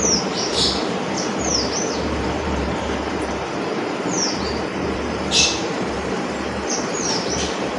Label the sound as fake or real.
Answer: fake